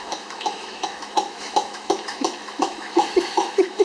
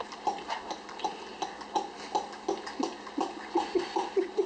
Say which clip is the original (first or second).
second